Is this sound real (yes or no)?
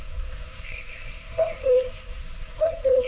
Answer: no